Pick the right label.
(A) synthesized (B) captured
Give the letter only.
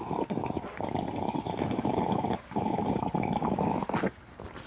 B